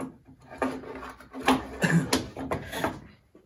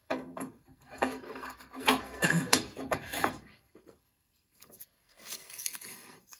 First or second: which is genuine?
first